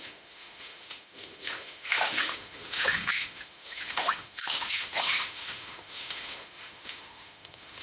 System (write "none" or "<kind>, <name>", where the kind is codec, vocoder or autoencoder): autoencoder, DAC-VAE